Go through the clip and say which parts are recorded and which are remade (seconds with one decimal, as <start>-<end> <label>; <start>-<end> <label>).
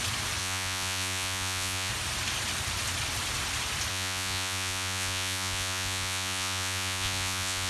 0.0-0.4 recorded; 0.4-1.9 remade; 1.9-3.9 recorded; 3.9-7.7 remade